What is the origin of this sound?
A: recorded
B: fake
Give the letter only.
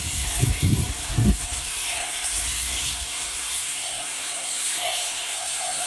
B